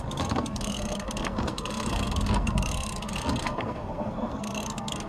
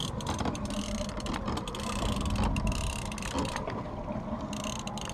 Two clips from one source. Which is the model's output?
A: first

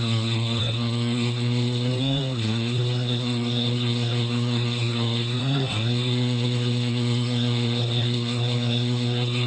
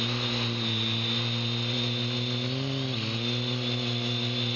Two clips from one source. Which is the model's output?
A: first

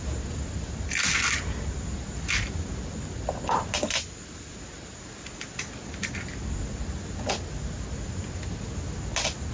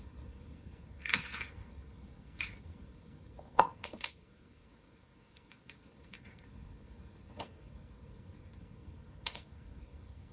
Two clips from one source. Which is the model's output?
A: second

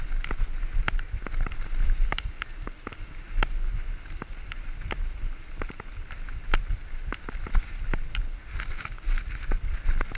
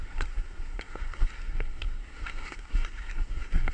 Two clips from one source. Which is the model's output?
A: second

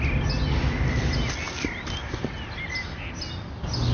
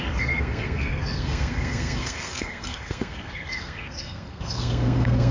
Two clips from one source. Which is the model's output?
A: second